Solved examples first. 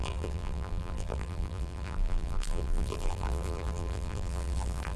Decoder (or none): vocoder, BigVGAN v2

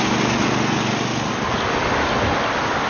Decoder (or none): none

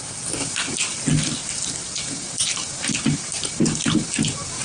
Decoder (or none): none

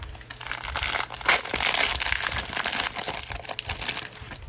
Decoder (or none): none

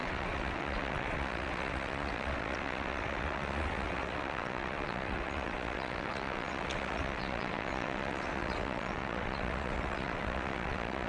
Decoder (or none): vocoder, WaveNeXt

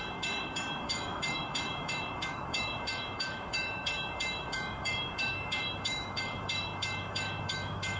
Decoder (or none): autoencoder, DAC-VAE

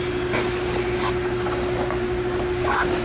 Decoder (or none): none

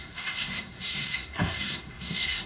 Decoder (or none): codec, SNAC